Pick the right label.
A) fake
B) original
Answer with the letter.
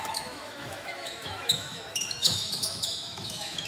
A